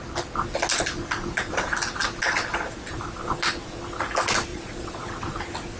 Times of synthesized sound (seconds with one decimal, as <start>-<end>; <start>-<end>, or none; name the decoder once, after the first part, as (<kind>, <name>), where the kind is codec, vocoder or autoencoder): 4.5-5.1 (vocoder, Vocos)